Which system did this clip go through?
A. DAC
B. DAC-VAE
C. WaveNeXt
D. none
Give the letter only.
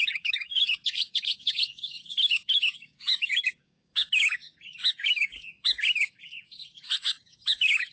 A